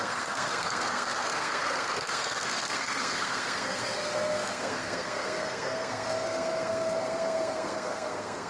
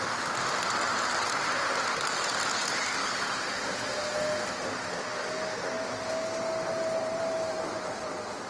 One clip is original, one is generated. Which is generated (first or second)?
first